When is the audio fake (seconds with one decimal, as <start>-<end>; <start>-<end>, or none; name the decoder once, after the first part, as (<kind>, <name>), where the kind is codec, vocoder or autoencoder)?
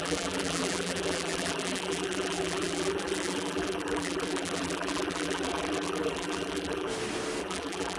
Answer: 0.0-6.9 (vocoder, BigVGAN v2); 7.4-8.0